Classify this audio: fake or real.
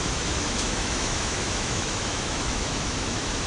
fake